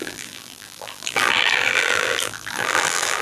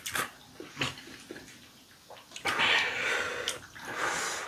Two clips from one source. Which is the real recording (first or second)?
second